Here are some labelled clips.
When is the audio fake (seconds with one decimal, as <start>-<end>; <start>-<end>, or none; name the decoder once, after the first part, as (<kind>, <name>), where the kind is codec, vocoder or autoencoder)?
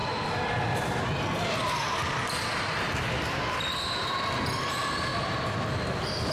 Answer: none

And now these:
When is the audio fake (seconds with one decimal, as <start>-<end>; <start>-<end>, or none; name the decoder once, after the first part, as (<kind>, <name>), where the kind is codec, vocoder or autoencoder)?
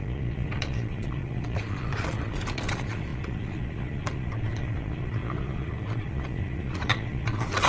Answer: 0.0-7.7 (vocoder, Vocos)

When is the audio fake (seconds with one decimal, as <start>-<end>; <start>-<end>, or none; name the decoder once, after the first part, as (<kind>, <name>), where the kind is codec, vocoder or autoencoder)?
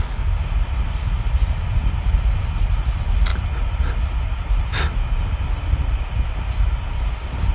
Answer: none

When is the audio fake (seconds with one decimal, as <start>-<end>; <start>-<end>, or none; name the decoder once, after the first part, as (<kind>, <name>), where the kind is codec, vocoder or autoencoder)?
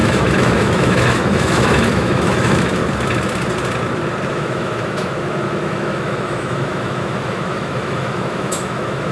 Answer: 0.0-2.8 (autoencoder, DAC-VAE); 4.3-9.1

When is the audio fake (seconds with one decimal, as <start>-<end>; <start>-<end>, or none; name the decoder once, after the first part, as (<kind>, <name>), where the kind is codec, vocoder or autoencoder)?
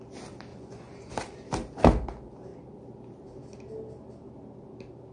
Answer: 0.5-1.1 (vocoder, Vocos)